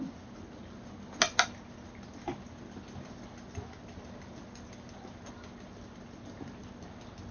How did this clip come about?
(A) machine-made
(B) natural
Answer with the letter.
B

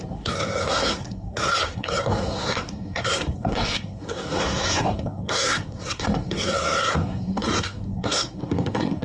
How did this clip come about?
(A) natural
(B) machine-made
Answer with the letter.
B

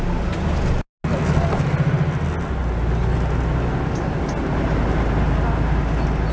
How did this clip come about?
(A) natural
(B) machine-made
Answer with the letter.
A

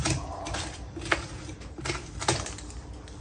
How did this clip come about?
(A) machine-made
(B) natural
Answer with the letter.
B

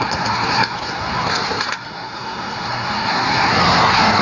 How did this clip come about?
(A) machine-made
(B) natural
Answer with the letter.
A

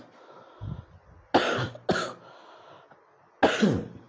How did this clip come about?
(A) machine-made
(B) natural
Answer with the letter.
B